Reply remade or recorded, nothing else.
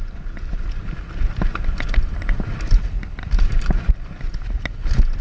recorded